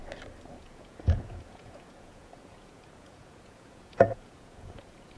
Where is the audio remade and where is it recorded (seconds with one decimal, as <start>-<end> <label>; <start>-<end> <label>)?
0.0-0.6 recorded; 0.6-5.2 remade